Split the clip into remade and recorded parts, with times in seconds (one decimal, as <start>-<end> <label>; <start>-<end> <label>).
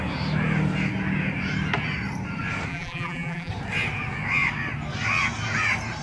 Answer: 0.0-2.7 recorded; 2.7-3.5 remade; 3.5-6.0 recorded